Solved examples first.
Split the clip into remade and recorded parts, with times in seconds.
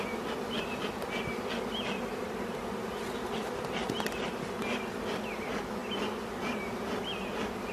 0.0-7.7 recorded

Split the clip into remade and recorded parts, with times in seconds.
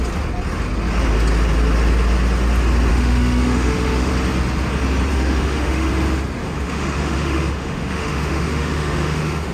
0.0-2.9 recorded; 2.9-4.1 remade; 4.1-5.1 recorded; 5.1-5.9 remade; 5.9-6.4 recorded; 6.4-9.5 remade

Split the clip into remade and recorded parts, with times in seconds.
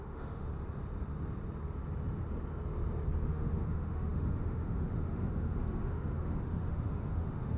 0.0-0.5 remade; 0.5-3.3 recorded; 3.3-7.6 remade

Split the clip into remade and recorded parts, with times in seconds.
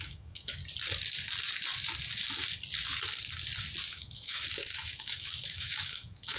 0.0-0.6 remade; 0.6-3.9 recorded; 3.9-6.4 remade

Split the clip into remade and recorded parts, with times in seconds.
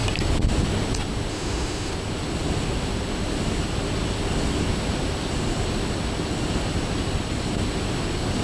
0.0-1.3 recorded; 1.3-1.9 remade; 1.9-8.4 recorded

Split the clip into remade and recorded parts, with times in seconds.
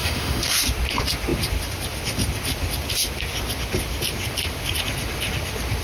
0.0-0.6 remade; 0.6-5.8 recorded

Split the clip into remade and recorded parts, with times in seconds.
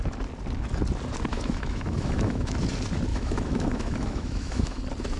0.0-1.3 recorded; 1.3-2.5 remade; 2.5-3.1 recorded; 3.1-4.8 remade; 4.8-5.2 recorded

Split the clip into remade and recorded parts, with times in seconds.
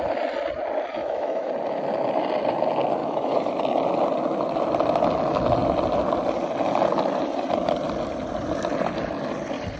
0.0-1.0 recorded; 1.0-1.5 remade; 1.5-3.0 recorded; 3.0-3.6 remade; 3.6-9.8 recorded